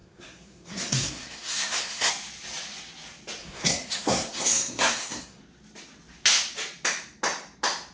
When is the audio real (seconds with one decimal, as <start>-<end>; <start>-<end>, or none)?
2.1-3.4; 5.4-7.9